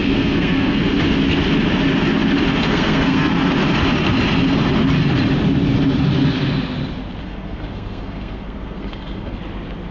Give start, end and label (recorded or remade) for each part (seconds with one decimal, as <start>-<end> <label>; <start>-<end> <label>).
0.0-0.8 remade; 0.8-2.5 recorded; 2.5-3.3 remade; 3.3-7.2 recorded; 7.2-9.4 remade; 9.4-9.9 recorded